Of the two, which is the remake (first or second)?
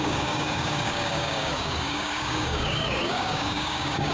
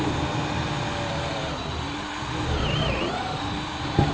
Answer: first